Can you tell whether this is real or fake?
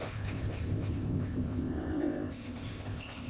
fake